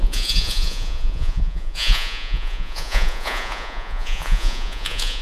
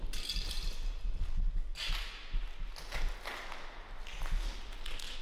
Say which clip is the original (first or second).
second